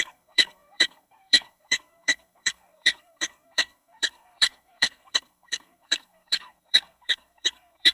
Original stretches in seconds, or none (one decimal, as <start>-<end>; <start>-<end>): none